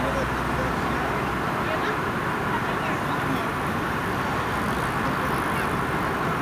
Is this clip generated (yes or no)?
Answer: no